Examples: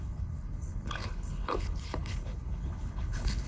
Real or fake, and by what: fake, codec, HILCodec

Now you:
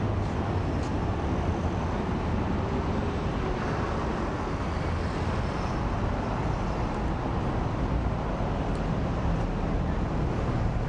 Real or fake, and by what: real